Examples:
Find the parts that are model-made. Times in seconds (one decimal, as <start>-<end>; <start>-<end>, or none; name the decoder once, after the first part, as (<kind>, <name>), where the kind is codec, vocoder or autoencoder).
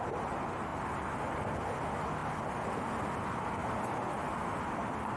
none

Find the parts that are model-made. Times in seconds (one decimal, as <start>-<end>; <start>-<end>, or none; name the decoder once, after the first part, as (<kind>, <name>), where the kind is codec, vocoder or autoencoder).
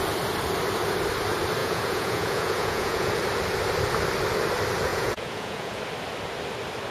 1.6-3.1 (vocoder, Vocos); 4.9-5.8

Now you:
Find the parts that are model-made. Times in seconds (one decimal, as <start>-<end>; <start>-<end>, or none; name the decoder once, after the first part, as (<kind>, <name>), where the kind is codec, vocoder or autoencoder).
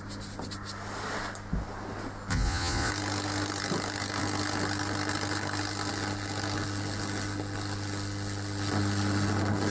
2.3-2.9 (vocoder, Vocos)